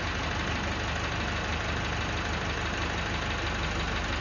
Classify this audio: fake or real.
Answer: real